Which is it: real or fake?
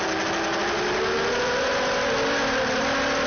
real